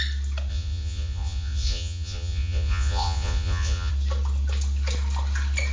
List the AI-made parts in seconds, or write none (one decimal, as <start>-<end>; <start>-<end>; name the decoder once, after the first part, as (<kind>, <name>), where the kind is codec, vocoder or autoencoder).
0.5-3.9 (vocoder, Vocos)